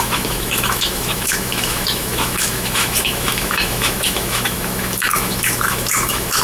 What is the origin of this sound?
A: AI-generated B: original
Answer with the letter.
A